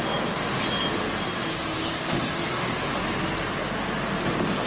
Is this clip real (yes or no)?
yes